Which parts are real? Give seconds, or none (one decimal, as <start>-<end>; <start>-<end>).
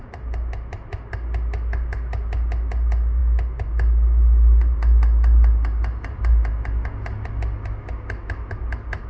0.0-9.1